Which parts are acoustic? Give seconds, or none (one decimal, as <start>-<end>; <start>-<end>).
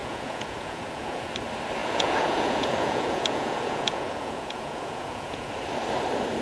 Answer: 1.3-1.8; 5.5-6.4